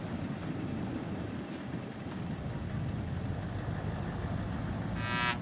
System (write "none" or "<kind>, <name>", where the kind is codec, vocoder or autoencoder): none